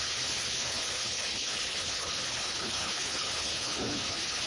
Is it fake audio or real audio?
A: fake